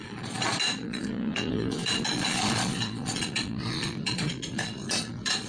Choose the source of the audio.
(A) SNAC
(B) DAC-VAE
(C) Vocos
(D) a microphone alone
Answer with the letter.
C